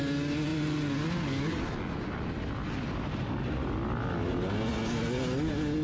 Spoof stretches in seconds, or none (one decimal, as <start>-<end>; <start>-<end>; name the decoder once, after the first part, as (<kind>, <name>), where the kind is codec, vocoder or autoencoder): none